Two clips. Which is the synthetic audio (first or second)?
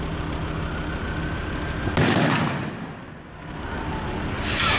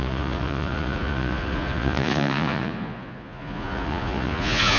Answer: second